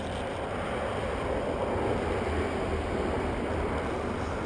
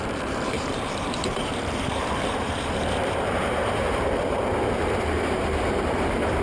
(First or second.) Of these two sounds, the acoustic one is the first